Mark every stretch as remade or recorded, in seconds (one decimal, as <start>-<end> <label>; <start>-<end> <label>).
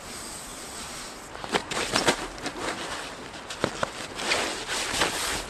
0.0-0.5 recorded; 0.5-1.0 remade; 1.0-1.6 recorded; 1.6-2.2 remade; 2.2-4.1 recorded; 4.1-5.0 remade; 5.0-5.5 recorded